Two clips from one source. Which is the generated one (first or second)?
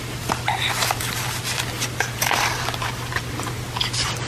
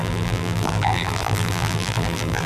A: second